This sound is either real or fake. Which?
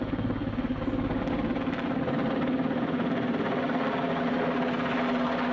real